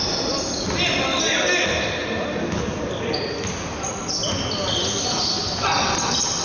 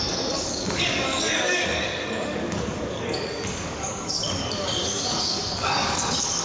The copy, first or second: second